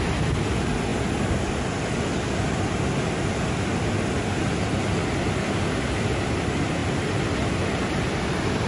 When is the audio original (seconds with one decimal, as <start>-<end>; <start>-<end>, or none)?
0.0-6.8